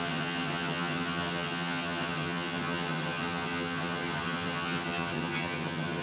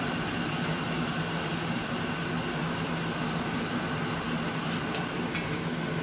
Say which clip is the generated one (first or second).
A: first